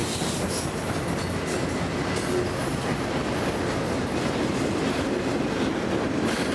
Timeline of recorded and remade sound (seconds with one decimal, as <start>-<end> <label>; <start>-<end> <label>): 0.0-6.5 recorded

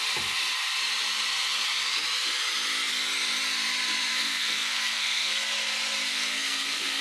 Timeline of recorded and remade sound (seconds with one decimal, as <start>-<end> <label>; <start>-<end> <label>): 0.0-4.1 recorded; 4.1-5.4 remade; 5.4-6.1 recorded; 6.1-7.0 remade

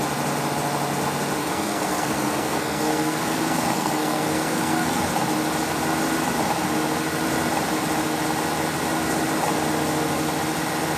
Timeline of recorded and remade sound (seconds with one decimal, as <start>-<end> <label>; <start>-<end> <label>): 0.0-1.4 recorded; 1.4-5.1 remade; 5.1-11.0 recorded